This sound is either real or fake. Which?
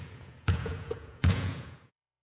fake